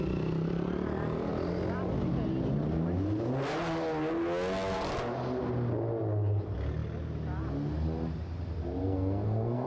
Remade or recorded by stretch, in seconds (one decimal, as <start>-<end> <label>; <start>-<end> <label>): 0.0-8.8 recorded; 8.8-9.7 remade